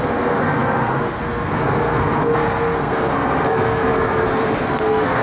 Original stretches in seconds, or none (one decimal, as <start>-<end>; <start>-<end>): none